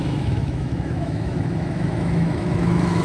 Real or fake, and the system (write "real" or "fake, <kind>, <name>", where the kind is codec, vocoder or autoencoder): fake, autoencoder, DAC-VAE